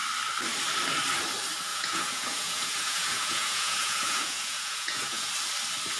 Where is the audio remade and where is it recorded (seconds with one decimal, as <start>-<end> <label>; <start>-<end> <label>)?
0.0-1.7 recorded; 1.7-5.3 remade; 5.3-6.0 recorded